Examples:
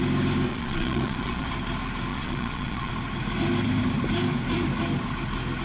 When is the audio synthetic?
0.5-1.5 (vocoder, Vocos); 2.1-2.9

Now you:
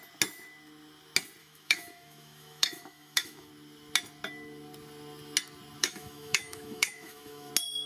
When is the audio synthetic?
1.4-3.5 (autoencoder, DAC-VAE); 5.8-7.5

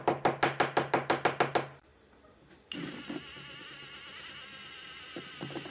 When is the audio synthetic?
none

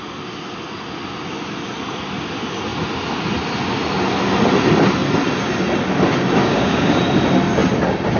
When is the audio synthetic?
6.4-7.0 (codec, DAC)